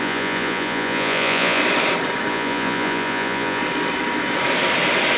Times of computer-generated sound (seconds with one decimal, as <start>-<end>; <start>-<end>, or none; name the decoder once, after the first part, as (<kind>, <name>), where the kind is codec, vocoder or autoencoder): 0.0-1.6 (vocoder, Vocos); 2.3-3.6